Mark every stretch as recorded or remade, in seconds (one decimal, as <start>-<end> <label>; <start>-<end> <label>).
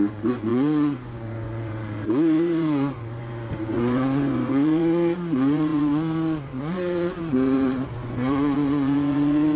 0.0-9.6 remade